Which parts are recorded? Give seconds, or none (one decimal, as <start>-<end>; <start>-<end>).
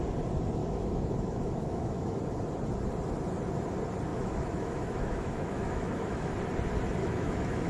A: 0.0-0.6; 2.2-4.1; 6.3-7.0